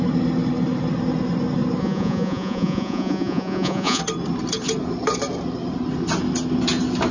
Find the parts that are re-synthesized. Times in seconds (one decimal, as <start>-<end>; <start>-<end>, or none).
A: 1.8-4.0